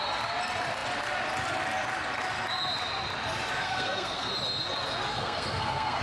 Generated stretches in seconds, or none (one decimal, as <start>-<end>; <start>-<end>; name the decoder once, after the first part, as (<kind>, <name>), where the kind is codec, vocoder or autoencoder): 3.6-4.3 (codec, SNAC); 5.1-6.0

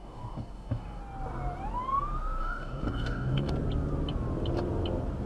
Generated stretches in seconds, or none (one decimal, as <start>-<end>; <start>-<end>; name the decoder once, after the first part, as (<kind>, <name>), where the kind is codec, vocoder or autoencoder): 0.0-1.0 (codec, DAC); 2.4-3.5

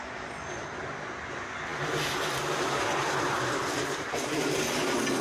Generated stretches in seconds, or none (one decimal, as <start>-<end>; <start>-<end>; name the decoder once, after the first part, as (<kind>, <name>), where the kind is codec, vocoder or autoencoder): none

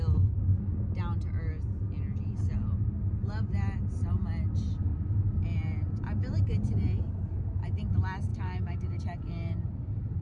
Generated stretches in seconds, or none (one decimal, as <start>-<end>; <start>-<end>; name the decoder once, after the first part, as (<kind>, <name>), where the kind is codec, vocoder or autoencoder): 8.3-9.0 (autoencoder, DAC-VAE)

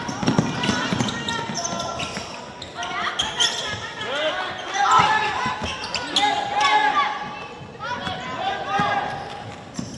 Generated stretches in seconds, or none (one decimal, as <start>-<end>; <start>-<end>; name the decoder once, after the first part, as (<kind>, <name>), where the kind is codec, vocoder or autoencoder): none

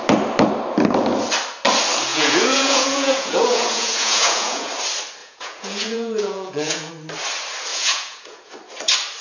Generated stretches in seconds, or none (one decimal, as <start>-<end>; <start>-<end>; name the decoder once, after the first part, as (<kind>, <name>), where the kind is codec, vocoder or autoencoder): 2.1-4.7 (vocoder, Vocos); 5.2-6.9; 7.7-8.5

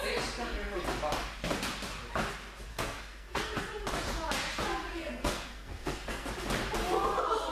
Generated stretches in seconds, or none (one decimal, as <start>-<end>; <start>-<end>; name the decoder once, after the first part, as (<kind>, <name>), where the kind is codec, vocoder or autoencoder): 2.7-3.6 (codec, SNAC); 4.9-6.3